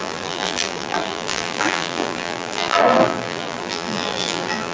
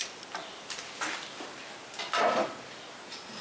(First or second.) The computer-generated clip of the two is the first